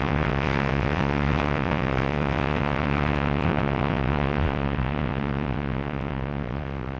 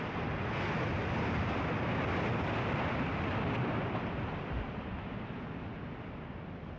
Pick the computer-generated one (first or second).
first